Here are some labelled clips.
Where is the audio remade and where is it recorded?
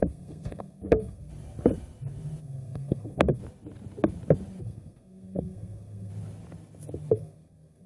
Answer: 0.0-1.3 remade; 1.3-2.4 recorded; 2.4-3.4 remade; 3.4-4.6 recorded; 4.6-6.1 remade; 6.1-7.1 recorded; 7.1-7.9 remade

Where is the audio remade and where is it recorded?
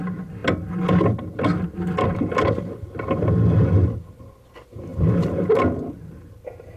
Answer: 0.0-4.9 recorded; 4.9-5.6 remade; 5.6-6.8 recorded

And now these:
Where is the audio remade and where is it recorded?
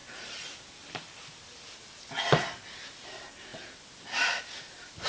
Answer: 0.0-5.1 recorded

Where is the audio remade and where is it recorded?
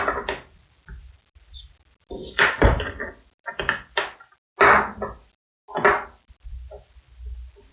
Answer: 0.0-2.2 recorded; 2.2-2.9 remade; 2.9-7.7 recorded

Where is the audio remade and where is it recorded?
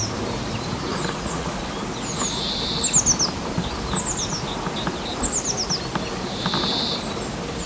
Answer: 0.0-0.9 recorded; 0.9-1.6 remade; 1.6-7.7 recorded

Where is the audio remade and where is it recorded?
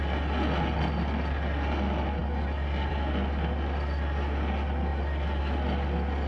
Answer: 0.0-6.3 recorded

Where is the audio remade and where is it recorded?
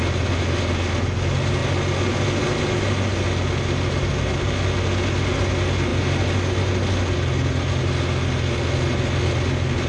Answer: 0.0-9.9 recorded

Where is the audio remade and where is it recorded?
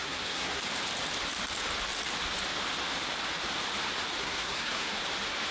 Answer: 0.0-0.6 remade; 0.6-4.2 recorded; 4.2-5.0 remade; 5.0-5.5 recorded